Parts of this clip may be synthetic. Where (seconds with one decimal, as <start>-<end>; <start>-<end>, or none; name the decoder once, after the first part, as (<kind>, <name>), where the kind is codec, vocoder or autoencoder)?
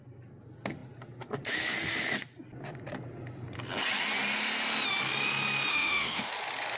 5.7-6.3 (autoencoder, DAC-VAE)